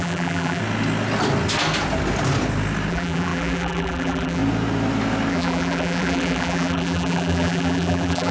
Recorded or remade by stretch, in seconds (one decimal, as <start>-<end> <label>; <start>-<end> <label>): 0.0-0.6 remade; 0.6-2.9 recorded; 2.9-4.4 remade; 4.4-5.3 recorded; 5.3-8.3 remade